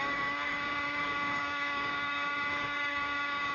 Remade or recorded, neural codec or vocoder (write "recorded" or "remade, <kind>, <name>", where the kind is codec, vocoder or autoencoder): remade, codec, DAC